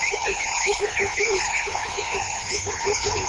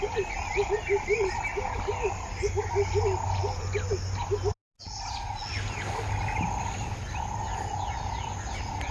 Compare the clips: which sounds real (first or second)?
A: second